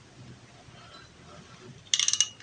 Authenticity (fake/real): real